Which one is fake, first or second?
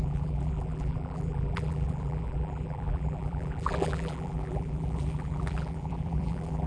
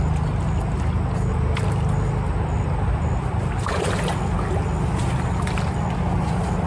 first